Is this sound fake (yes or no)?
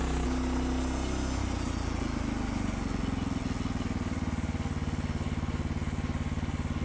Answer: no